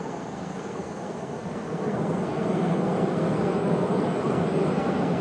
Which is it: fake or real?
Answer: fake